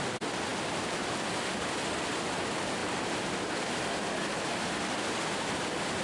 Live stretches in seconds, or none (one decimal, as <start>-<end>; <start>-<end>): 0.5-1.4